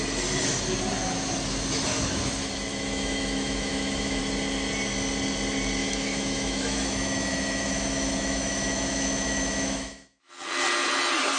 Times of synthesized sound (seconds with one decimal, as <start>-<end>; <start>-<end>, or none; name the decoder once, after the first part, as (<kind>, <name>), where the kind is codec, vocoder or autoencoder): 2.7-4.2 (autoencoder, DAC-VAE); 5.8-10.3